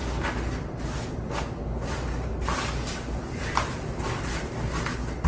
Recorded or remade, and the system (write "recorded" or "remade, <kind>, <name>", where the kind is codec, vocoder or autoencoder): recorded